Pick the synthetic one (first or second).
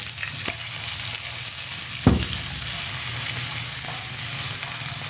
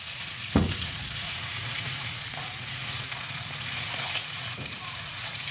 second